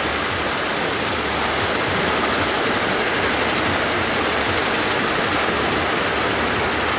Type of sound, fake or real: real